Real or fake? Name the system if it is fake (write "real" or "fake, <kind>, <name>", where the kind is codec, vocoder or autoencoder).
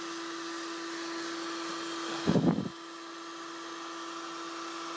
real